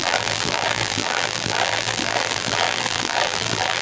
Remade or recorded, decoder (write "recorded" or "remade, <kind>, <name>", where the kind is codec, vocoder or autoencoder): remade, vocoder, BigVGAN v2